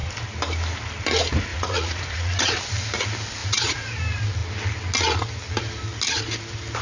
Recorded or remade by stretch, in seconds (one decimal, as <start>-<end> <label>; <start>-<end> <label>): 0.0-1.5 recorded; 1.5-2.6 remade; 2.6-3.4 recorded; 3.4-4.0 remade; 4.0-6.8 recorded